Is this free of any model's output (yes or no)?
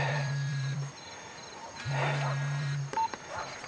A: no